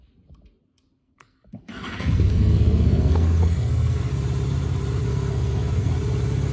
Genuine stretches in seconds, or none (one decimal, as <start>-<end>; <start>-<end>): 0.0-1.0; 4.1-5.0; 5.9-6.5